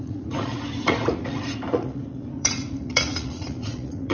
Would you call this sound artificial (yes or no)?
yes